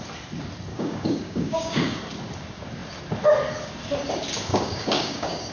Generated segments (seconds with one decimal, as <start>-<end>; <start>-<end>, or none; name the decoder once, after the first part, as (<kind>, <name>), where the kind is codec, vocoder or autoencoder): 0.7-2.0 (codec, DAC); 4.5-5.5